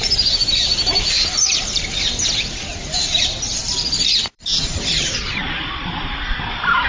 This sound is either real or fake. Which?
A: fake